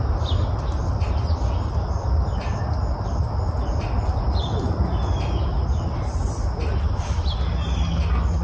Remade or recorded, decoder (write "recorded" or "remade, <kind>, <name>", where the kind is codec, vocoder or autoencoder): recorded